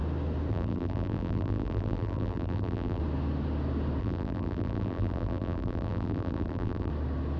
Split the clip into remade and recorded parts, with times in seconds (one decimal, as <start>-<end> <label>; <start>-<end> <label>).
0.0-0.5 recorded; 0.5-3.0 remade; 3.0-4.0 recorded; 4.0-6.9 remade; 6.9-7.4 recorded